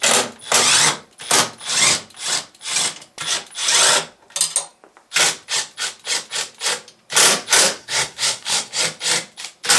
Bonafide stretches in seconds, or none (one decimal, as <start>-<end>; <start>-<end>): 0.0-7.8; 8.8-9.8